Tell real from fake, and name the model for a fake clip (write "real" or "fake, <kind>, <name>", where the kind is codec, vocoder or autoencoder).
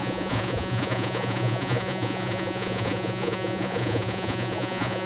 fake, vocoder, Vocos